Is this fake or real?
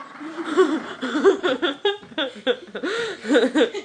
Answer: fake